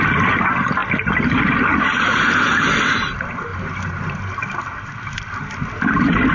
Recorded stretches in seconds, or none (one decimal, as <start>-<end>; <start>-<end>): 0.0-6.3